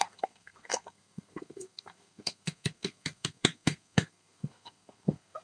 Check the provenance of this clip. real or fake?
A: fake